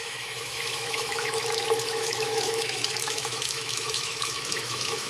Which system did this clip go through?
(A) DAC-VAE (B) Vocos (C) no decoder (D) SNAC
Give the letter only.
A